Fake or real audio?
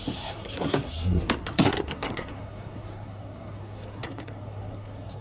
fake